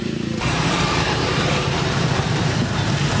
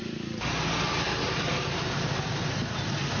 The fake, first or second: first